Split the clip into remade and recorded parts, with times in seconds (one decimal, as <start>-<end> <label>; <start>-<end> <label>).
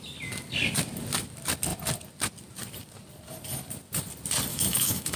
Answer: 0.0-4.5 recorded; 4.5-5.2 remade